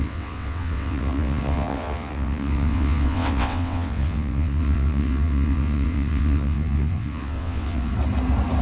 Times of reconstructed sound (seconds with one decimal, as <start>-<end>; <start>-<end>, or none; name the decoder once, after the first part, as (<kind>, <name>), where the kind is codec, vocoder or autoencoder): 0.0-7.9 (vocoder, WaveNeXt)